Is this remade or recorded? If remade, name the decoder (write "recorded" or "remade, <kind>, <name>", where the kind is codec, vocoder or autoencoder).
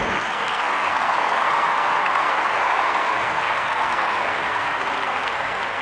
remade, codec, SNAC